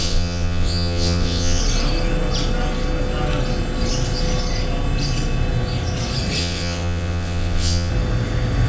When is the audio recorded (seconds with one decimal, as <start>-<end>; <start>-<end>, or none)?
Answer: 1.6-6.4; 7.9-8.7